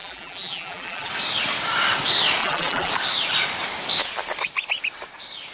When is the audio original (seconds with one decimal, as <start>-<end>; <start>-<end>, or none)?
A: 1.1-2.4; 2.9-5.5